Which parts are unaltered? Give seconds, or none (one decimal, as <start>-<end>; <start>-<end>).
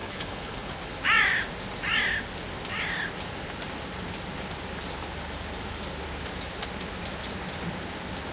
0.7-8.3